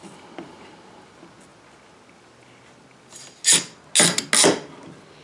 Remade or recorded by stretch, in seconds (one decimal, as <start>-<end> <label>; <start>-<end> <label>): 0.0-5.2 recorded